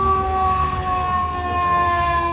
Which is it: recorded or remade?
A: remade